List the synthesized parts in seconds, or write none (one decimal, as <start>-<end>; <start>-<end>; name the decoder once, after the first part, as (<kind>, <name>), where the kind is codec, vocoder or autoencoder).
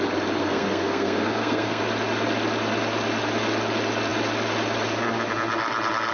0.4-1.8 (codec, SNAC)